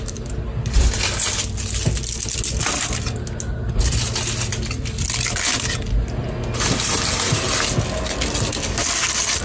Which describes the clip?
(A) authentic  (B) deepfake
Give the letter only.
A